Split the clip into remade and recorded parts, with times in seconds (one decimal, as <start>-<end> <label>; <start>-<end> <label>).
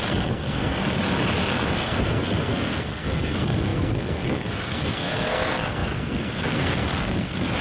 0.0-0.8 remade; 0.8-1.5 recorded; 1.5-7.6 remade